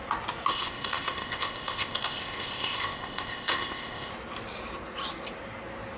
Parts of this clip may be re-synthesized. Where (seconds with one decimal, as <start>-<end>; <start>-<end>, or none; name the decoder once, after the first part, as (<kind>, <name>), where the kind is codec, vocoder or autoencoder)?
0.5-4.1 (codec, ZipCodec)